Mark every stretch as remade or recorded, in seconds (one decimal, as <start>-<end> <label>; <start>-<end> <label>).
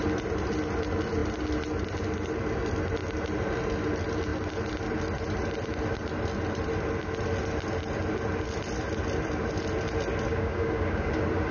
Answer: 0.0-10.3 recorded; 10.3-11.1 remade; 11.1-11.5 recorded